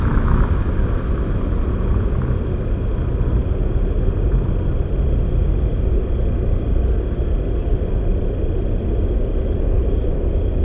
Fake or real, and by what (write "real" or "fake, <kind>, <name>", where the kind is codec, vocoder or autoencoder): real